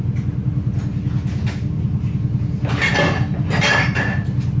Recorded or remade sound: recorded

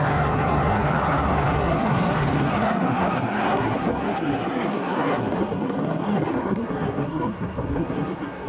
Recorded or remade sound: remade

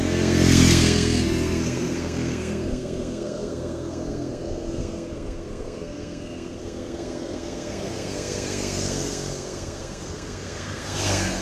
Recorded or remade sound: remade